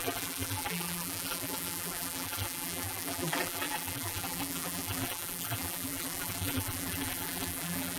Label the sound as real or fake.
fake